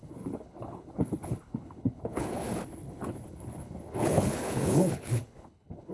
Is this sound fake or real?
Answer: fake